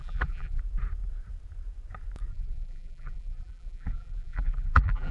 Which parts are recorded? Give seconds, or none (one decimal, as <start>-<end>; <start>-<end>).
0.6-2.3